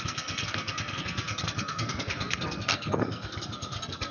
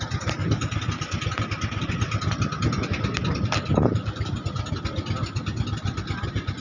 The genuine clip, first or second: second